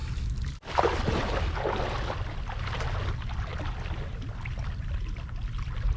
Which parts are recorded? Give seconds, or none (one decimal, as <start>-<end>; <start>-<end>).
0.0-6.0